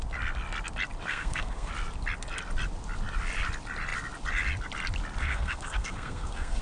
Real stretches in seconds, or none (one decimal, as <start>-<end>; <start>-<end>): 0.0-1.1; 1.7-5.2